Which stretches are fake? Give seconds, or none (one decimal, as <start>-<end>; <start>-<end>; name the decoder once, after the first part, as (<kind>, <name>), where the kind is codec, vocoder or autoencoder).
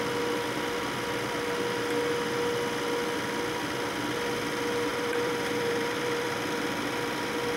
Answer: 4.9-6.6 (vocoder, BigVGAN v2)